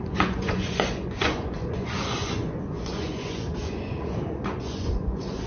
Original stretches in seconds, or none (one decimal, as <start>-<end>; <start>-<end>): none

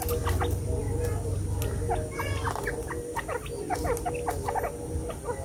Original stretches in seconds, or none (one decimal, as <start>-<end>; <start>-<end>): 0.0-5.4

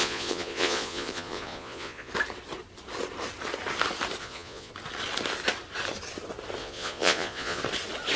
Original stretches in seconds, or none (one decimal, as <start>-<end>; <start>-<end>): 2.1-4.2; 4.7-6.6; 7.6-8.2

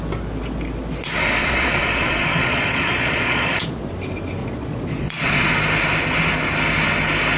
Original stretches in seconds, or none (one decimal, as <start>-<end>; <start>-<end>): 0.0-1.4; 3.9-4.4; 5.5-7.4

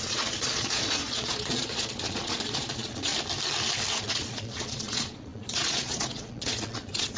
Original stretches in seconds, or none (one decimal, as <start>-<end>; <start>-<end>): 3.1-3.9